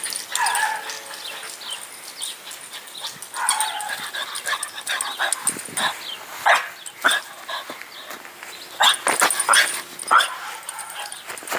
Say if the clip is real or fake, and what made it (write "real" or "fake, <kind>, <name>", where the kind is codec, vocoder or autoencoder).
real